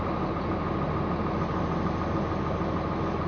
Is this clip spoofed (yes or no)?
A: no